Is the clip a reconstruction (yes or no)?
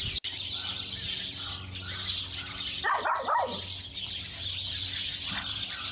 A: no